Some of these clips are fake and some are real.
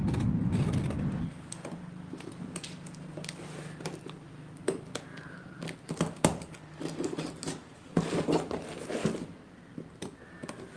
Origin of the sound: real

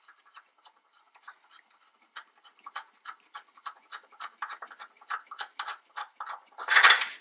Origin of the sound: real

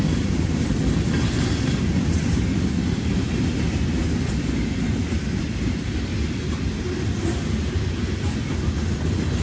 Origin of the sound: real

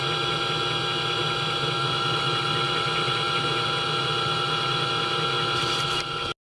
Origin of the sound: real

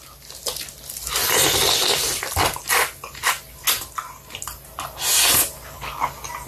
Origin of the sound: real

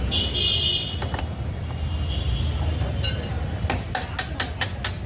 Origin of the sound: real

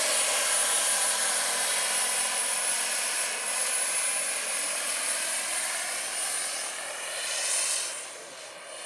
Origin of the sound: real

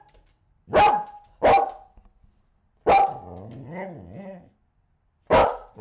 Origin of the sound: real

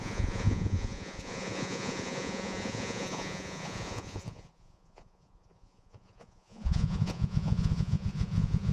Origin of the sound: fake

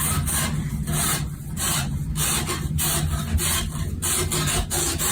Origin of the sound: real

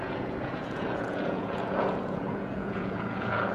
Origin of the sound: fake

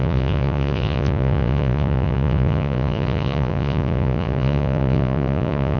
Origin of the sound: fake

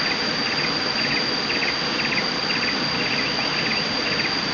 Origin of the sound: real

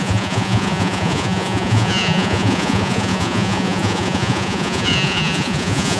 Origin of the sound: fake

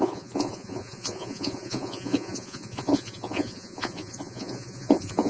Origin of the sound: fake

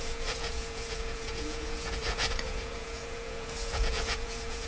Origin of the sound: fake